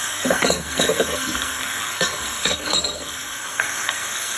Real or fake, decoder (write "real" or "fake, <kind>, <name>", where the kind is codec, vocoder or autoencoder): fake, codec, SNAC